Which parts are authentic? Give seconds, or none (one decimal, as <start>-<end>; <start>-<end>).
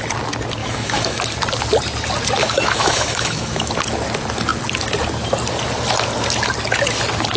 0.0-0.6; 1.2-2.4; 3.7-7.4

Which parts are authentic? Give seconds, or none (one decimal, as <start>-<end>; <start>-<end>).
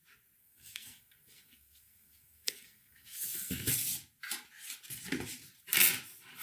0.0-0.4; 3.7-6.4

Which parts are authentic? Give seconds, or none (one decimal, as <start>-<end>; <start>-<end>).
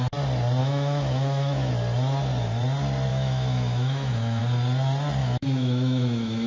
0.0-0.6; 1.7-3.1; 4.4-5.2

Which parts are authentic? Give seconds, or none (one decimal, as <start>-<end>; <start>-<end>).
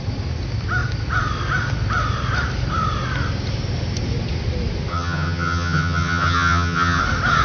0.0-4.9; 7.0-7.4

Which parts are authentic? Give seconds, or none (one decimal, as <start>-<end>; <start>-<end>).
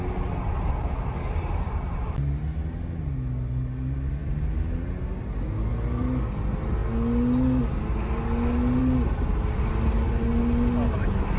0.0-11.4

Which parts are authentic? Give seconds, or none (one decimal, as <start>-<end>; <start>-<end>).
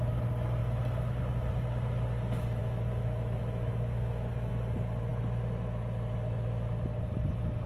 0.0-2.6; 4.5-7.7